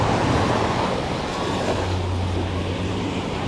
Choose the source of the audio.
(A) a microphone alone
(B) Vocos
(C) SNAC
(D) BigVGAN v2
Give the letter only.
A